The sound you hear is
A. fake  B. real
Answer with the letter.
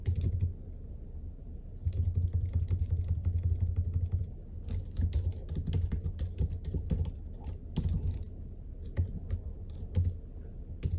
B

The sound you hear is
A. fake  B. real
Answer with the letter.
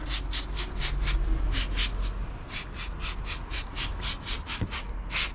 B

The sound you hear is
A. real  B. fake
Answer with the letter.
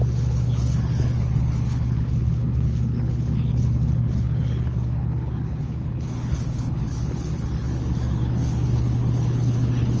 B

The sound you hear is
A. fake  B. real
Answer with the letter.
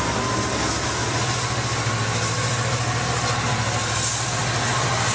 B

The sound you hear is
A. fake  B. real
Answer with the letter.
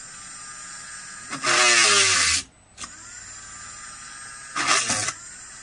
B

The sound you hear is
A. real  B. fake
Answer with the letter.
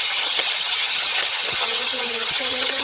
B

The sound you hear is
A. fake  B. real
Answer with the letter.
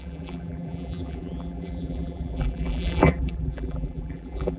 A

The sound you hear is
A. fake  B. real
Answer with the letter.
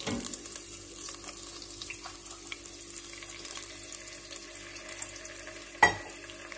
B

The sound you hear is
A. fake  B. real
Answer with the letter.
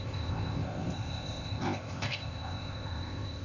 A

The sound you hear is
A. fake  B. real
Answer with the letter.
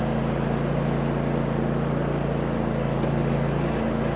B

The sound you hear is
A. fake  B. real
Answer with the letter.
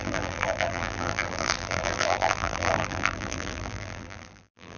A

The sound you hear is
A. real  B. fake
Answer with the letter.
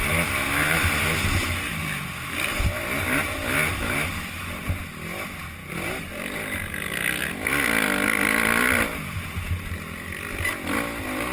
A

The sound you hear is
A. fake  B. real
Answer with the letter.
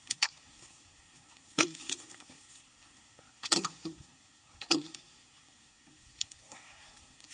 A